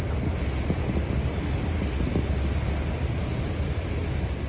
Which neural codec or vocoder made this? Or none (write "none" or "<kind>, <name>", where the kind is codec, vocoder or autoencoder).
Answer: none